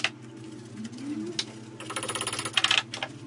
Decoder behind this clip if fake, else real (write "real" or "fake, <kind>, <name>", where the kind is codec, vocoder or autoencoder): real